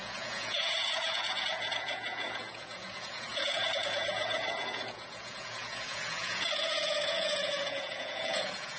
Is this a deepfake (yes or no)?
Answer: yes